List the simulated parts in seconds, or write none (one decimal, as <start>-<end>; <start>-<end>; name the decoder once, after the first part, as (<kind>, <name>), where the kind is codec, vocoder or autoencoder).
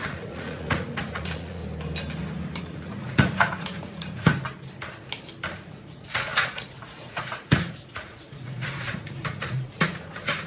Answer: 0.0-1.6 (vocoder, Vocos); 2.6-4.3; 5.5-10.5